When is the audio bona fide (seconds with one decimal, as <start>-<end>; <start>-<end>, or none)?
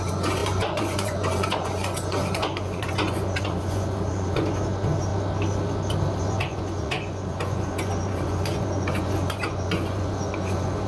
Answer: 5.1-6.2